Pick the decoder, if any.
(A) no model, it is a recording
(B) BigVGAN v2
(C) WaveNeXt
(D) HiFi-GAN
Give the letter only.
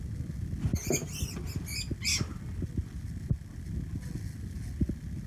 A